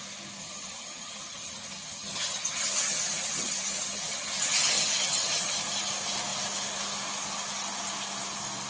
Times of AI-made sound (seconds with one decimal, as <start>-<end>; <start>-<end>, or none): 0.4-5.6

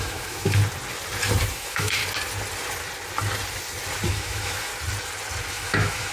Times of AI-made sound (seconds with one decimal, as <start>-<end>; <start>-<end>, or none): 0.0-0.6; 1.5-2.0; 4.1-4.7; 5.5-6.1

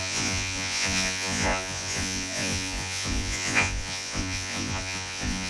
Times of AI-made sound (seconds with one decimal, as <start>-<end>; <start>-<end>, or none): 0.0-5.5

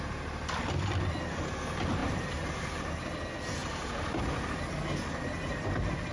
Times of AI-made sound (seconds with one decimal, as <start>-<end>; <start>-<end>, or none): 2.0-2.9; 3.6-4.2

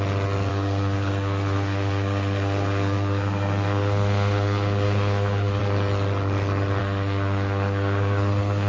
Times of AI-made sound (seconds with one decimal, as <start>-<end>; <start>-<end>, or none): 0.5-5.6; 6.8-8.7